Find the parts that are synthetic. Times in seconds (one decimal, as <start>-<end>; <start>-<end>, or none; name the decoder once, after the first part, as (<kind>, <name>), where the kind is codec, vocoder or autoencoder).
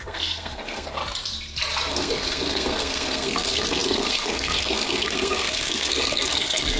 0.0-1.0 (codec, SNAC); 1.9-6.8